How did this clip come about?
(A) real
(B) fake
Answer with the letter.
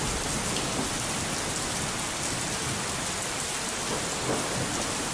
A